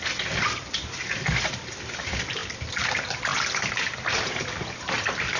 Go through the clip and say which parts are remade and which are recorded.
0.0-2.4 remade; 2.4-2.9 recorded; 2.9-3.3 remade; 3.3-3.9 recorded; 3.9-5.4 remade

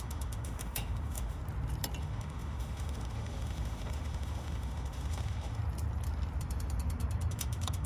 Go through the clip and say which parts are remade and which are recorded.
0.0-1.4 remade; 1.4-2.0 recorded; 2.0-5.6 remade; 5.6-7.3 recorded; 7.3-7.9 remade

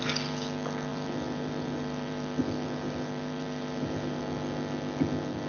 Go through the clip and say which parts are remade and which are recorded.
0.0-0.9 recorded; 0.9-4.2 remade; 4.2-5.5 recorded

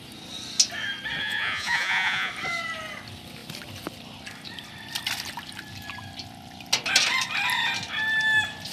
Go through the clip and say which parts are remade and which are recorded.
0.0-1.2 recorded; 1.2-2.3 remade; 2.3-8.7 recorded